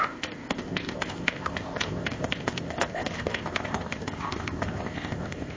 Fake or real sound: fake